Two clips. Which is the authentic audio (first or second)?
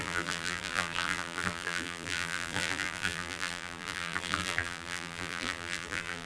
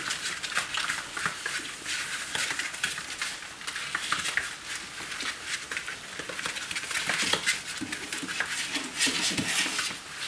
second